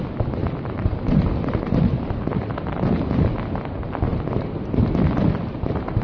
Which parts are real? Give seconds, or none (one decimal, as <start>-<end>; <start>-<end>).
0.0-0.4; 3.1-4.1; 4.9-6.0

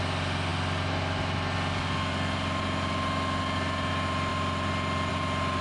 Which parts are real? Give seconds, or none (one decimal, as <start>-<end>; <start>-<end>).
0.0-5.6